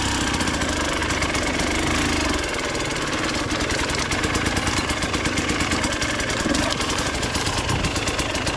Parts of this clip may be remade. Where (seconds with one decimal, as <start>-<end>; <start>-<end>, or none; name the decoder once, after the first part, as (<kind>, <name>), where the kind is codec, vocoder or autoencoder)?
none